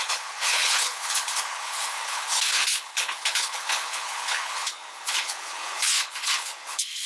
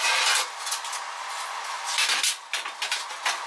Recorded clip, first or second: second